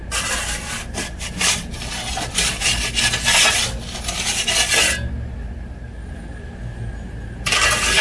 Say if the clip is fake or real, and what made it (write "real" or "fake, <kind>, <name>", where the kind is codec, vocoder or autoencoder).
real